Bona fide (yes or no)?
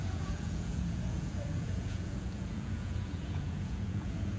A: no